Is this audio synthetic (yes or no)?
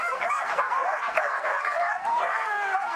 yes